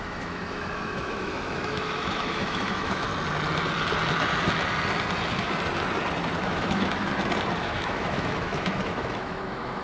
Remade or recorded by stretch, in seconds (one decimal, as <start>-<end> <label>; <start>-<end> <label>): 0.0-3.1 remade; 3.1-6.4 recorded; 6.4-7.1 remade; 7.1-7.6 recorded; 7.6-9.8 remade

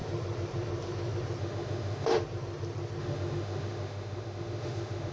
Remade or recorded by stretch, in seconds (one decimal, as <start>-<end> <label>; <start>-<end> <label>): 0.0-1.4 recorded; 1.4-2.1 remade; 2.1-3.0 recorded; 3.0-5.1 remade

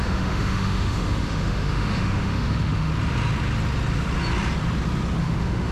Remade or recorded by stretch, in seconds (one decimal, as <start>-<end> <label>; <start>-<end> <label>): 0.0-2.9 remade; 2.9-5.2 recorded; 5.2-5.7 remade

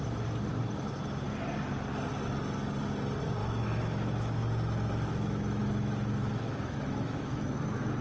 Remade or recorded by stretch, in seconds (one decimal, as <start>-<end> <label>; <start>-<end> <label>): 0.0-3.4 recorded; 3.4-8.0 remade

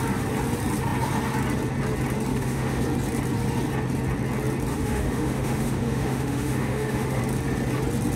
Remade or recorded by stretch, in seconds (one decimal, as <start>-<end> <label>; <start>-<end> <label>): 0.0-2.3 recorded; 2.3-2.8 remade; 2.8-4.7 recorded; 4.7-7.2 remade; 7.2-8.2 recorded

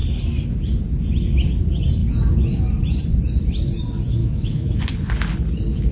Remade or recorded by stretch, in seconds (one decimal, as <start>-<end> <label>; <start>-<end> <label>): 0.0-4.2 recorded; 4.2-4.8 remade; 4.8-5.9 recorded

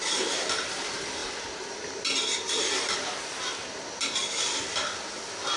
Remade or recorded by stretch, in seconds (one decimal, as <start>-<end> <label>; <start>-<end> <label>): 0.0-5.6 recorded

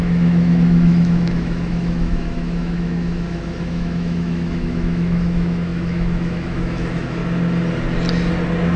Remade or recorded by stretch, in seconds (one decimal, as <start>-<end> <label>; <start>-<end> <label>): 0.0-7.2 remade; 7.2-8.8 recorded